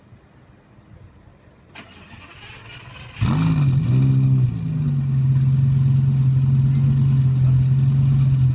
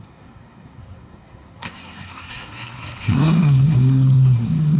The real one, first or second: first